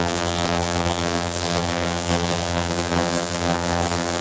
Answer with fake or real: fake